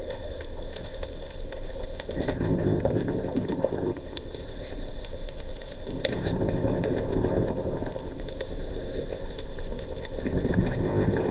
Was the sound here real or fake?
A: fake